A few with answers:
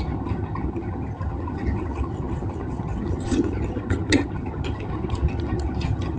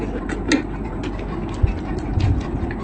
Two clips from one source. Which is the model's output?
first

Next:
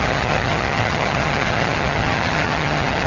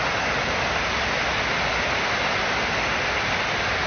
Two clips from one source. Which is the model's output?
first